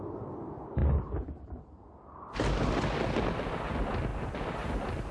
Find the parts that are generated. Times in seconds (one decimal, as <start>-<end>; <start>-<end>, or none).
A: none